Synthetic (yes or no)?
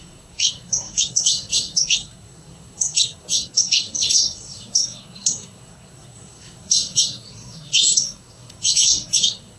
yes